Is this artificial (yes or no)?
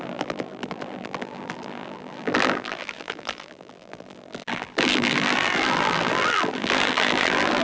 yes